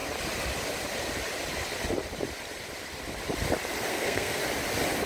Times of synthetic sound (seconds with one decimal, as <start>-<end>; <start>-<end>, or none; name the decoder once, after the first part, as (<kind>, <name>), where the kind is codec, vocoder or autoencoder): 3.9-4.4 (codec, SNAC)